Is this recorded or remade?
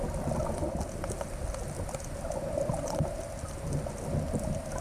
recorded